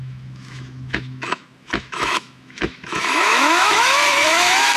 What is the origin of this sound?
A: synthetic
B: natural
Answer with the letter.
A